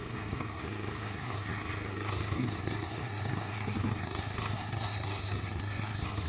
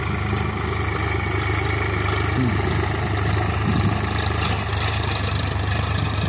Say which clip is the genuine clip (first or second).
second